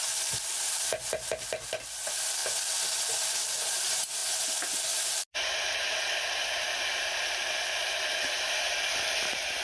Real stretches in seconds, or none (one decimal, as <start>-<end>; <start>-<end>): 0.0-9.6